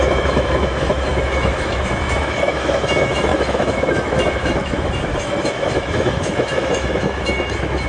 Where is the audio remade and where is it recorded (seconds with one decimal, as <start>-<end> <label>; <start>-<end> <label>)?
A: 0.0-7.9 remade